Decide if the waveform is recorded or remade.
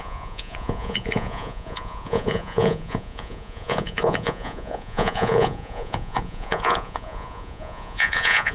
remade